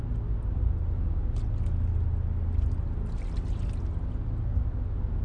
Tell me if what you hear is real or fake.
real